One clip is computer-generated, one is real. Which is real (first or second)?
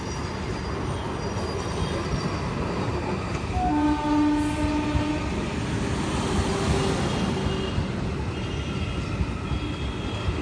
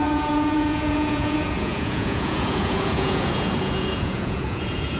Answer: first